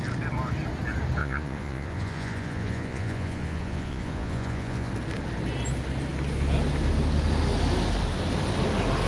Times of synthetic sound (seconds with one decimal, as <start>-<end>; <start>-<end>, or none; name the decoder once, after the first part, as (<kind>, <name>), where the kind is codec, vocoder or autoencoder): 1.2-4.9 (vocoder, Vocos)